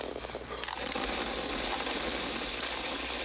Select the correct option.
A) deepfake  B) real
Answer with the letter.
B